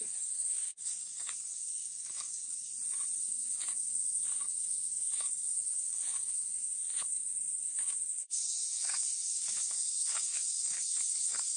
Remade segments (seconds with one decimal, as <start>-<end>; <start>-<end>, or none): 0.0-2.7; 3.2-11.6